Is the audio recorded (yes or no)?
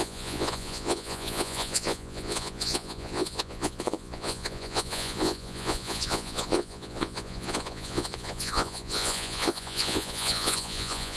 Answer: no